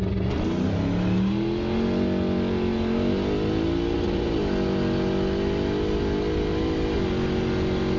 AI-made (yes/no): no